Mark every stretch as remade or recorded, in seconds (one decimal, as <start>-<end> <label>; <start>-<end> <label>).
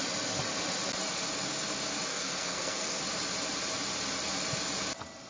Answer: 0.0-2.1 recorded; 2.1-3.0 remade; 3.0-5.3 recorded